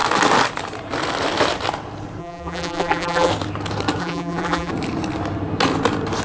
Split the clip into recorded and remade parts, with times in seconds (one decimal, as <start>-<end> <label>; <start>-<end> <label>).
0.0-2.2 recorded; 2.2-3.3 remade; 3.3-4.0 recorded; 4.0-4.7 remade; 4.7-6.2 recorded